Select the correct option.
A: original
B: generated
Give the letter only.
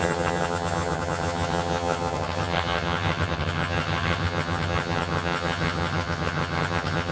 B